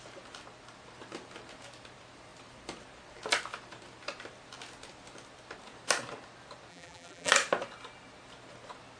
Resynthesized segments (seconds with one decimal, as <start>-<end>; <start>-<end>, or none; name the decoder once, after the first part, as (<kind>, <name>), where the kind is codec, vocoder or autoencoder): 6.7-7.3 (vocoder, BigVGAN v2)